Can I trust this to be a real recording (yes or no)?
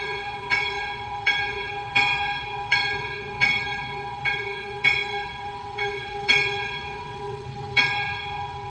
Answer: no